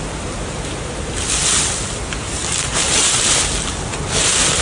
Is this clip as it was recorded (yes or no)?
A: yes